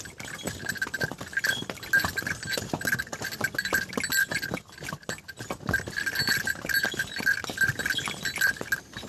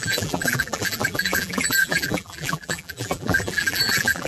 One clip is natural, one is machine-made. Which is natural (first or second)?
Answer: first